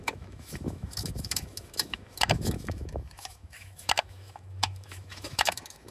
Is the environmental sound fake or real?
fake